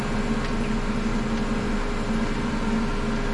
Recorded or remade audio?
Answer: recorded